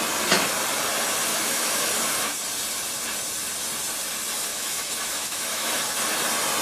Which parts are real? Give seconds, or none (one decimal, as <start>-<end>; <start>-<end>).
0.0-1.3; 1.9-4.5; 5.7-6.6